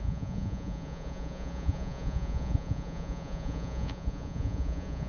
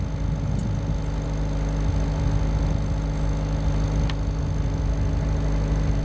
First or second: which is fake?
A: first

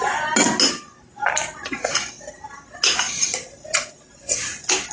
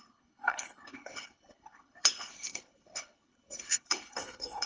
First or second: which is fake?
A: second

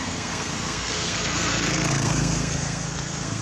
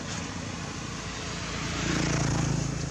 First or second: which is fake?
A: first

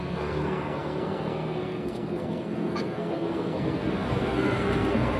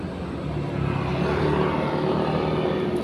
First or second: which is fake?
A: first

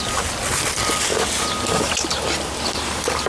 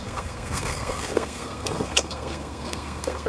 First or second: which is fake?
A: second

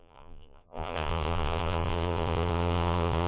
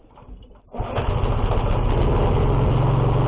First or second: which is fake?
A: first